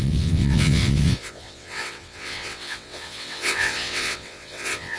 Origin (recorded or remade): remade